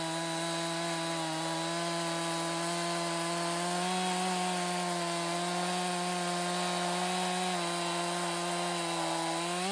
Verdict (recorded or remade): recorded